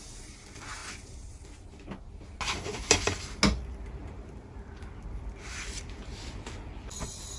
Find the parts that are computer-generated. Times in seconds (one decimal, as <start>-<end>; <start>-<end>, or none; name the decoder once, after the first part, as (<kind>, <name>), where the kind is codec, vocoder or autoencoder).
4.0-4.7 (vocoder, BigVGAN v2)